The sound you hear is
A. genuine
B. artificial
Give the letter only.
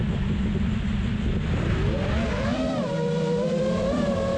B